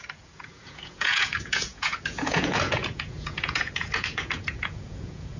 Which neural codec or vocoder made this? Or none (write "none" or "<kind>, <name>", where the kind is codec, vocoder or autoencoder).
vocoder, Vocos